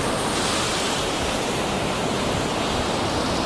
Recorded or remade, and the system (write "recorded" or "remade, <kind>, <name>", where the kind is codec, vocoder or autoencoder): recorded